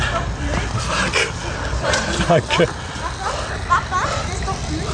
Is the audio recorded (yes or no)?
yes